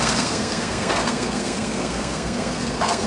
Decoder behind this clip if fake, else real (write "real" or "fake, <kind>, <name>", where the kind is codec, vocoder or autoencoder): fake, codec, SNAC